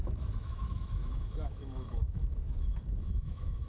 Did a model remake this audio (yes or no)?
yes